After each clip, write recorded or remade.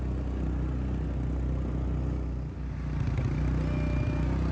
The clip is recorded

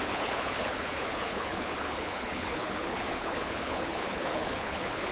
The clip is remade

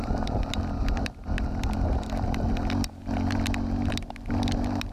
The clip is recorded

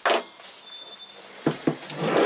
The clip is recorded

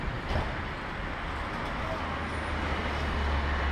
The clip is recorded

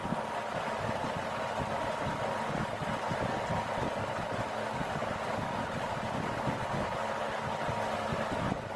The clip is recorded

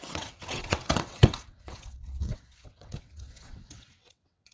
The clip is remade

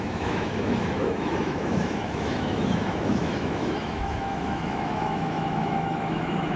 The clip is remade